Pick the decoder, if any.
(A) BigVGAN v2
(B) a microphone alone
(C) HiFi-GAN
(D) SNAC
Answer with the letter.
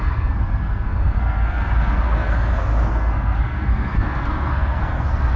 D